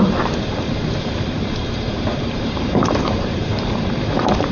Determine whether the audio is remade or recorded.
remade